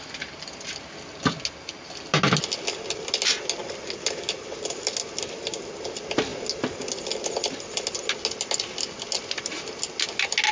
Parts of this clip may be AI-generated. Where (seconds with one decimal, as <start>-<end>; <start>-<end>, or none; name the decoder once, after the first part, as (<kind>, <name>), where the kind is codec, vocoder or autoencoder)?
none